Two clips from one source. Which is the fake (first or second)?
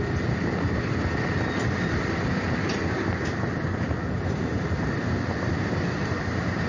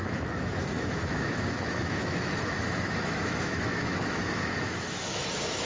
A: second